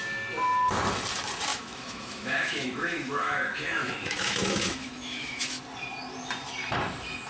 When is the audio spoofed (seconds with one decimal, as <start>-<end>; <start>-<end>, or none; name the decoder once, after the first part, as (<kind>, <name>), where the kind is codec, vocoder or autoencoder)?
1.5-5.6 (autoencoder, DAC-VAE)